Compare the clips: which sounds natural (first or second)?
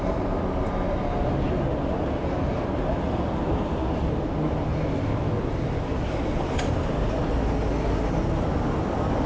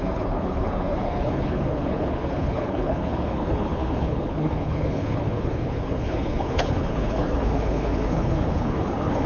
first